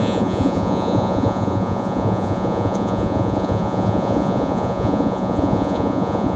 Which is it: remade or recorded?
remade